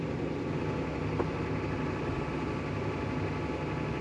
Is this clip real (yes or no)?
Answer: yes